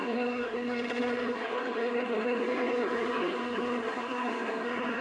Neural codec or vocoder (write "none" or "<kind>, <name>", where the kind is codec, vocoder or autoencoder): codec, SNAC